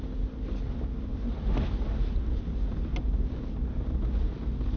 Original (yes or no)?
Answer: yes